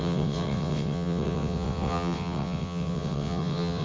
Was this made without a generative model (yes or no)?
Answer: no